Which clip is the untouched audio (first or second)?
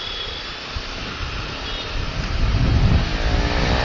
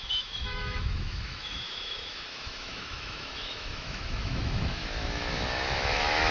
first